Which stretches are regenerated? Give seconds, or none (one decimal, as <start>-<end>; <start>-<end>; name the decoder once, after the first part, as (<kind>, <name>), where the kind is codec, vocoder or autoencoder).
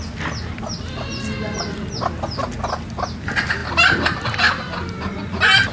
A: none